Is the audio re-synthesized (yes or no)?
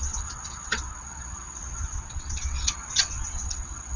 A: yes